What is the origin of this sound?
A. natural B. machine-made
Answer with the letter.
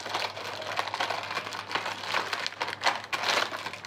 A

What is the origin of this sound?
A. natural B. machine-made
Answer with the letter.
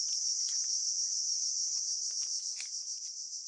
A